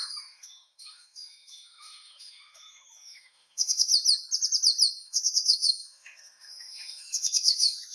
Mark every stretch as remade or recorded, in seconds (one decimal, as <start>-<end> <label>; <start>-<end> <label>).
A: 0.0-3.9 remade; 3.9-5.0 recorded; 5.0-7.9 remade